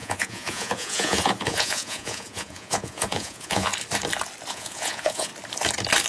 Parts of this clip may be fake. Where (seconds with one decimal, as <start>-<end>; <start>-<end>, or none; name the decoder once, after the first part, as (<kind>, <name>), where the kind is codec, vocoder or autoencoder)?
0.0-3.7 (vocoder, Vocos); 4.5-5.3